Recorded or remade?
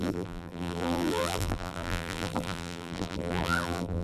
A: remade